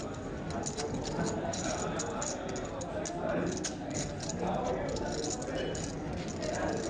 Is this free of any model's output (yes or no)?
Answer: yes